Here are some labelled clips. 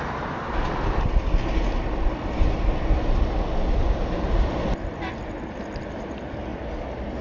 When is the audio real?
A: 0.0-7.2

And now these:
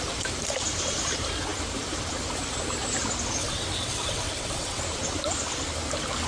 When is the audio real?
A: 0.0-3.4; 4.8-6.3

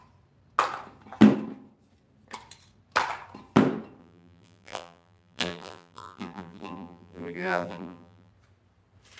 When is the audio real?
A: 0.0-4.0; 8.3-9.2

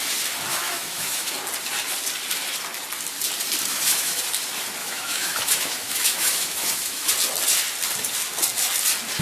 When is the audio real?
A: 0.0-0.5; 1.3-3.7; 4.2-4.8; 7.1-9.2

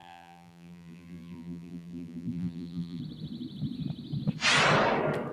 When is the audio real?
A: 3.0-5.3